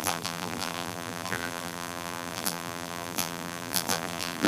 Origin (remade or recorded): remade